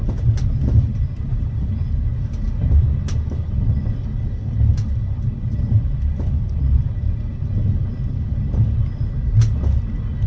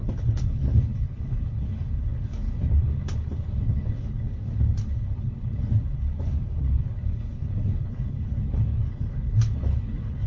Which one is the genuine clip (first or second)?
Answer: first